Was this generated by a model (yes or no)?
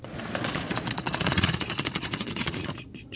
yes